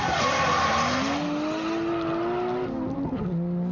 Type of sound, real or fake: real